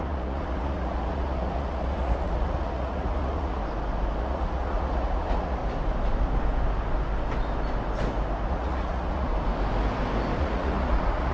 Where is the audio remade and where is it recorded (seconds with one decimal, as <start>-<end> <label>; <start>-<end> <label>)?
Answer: 0.0-3.6 remade; 3.6-4.2 recorded; 4.2-5.6 remade; 5.6-8.5 recorded; 8.5-9.3 remade; 9.3-10.4 recorded; 10.4-11.3 remade